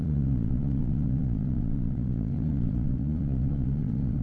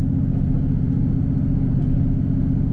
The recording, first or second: second